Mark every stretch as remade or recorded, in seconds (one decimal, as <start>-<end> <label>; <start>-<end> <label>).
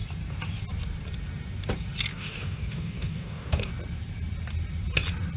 0.0-2.1 recorded; 2.1-3.7 remade; 3.7-5.4 recorded